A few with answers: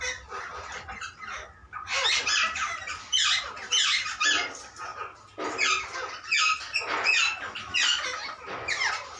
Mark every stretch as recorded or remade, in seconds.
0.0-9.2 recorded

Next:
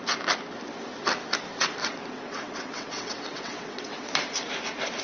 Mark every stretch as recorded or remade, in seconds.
0.0-1.8 recorded; 1.8-4.1 remade; 4.1-5.0 recorded

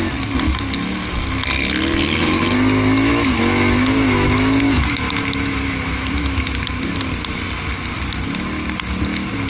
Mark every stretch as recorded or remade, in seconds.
0.0-3.1 recorded; 3.1-6.5 remade; 6.5-9.5 recorded

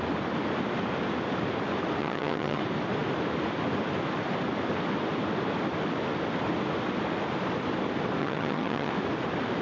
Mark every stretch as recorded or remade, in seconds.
0.0-2.0 recorded; 2.0-2.6 remade; 2.6-8.2 recorded; 8.2-8.9 remade; 8.9-9.6 recorded